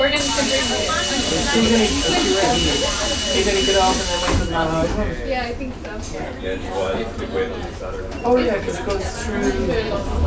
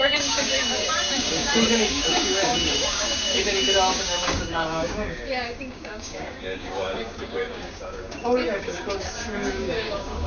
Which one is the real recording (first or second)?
first